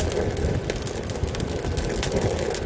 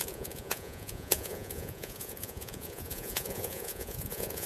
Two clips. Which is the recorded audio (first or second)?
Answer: first